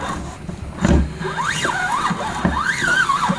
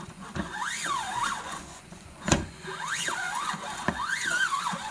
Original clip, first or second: first